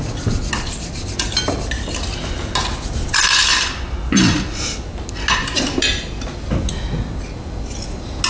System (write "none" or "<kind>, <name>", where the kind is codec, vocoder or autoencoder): none